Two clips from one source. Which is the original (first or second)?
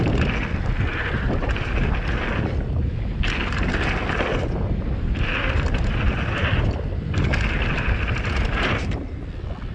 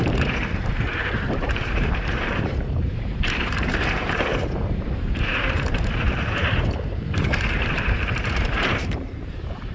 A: first